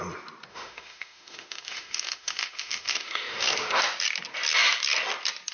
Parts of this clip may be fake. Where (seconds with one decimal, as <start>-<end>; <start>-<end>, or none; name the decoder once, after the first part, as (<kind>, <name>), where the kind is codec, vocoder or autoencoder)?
0.5-3.8 (autoencoder, DAC-VAE)